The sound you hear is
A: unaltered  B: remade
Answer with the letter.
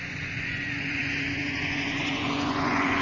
B